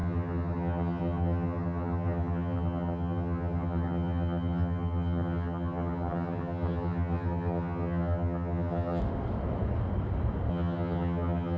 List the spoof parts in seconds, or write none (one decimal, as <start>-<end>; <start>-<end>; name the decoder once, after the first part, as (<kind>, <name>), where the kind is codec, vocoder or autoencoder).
0.0-9.0 (vocoder, HiFi-GAN); 10.5-11.6